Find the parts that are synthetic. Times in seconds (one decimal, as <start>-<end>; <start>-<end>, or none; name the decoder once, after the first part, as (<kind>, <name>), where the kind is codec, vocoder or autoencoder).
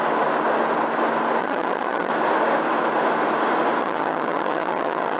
1.4-2.1 (vocoder, HiFi-GAN); 3.8-5.2